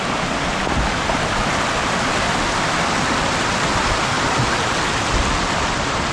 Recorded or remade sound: recorded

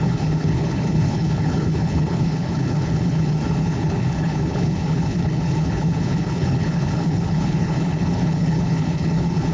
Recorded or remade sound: remade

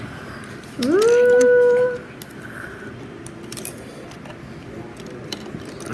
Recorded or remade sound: recorded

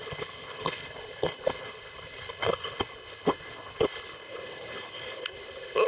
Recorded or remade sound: remade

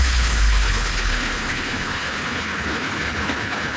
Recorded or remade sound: remade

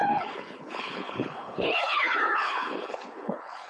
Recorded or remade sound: remade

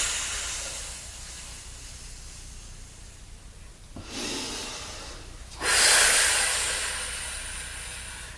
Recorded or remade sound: recorded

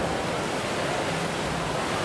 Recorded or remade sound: recorded